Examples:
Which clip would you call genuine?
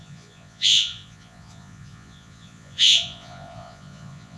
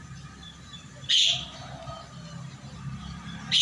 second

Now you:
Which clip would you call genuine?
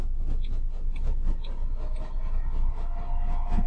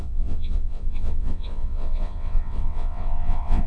first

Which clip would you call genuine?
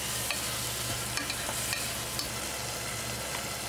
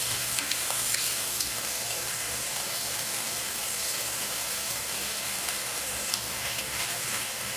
first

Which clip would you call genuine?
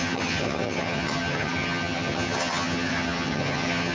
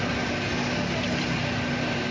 second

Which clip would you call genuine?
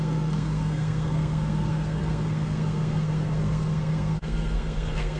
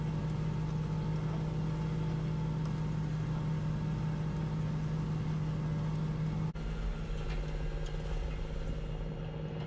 second